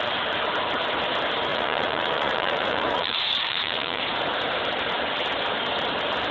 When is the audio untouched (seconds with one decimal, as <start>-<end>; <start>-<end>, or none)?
0.0-1.5; 4.0-6.3